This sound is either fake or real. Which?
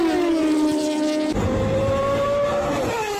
real